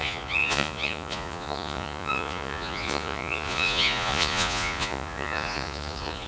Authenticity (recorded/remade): remade